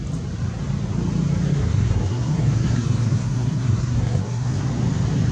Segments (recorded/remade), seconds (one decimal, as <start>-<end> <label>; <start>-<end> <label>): 0.0-1.5 recorded; 1.5-4.7 remade; 4.7-5.3 recorded